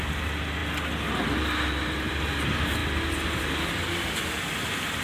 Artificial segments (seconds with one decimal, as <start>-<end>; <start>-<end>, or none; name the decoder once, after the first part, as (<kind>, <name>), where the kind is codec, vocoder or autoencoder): 2.8-4.6 (vocoder, BigVGAN v2)